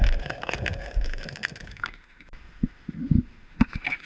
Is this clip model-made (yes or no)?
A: yes